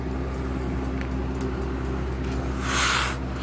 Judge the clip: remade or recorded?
recorded